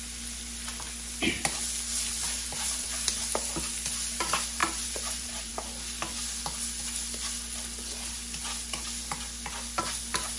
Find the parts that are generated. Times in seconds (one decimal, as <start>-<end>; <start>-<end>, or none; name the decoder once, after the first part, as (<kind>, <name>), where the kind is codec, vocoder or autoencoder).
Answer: 1.9-3.1 (vocoder, BigVGAN v2); 4.6-5.5